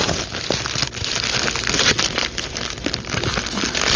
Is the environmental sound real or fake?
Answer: real